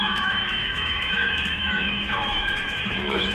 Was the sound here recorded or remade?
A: remade